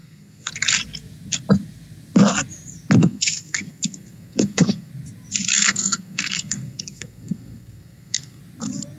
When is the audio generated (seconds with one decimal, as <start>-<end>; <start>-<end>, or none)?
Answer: 0.0-0.5; 3.0-4.9; 5.5-8.4